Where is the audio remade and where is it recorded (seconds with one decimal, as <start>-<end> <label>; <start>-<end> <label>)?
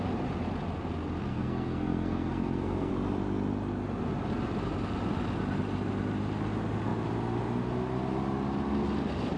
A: 0.0-1.3 recorded; 1.3-2.9 remade; 2.9-9.4 recorded